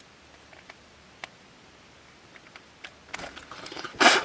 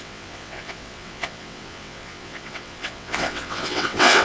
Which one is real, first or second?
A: first